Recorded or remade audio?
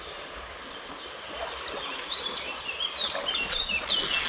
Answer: recorded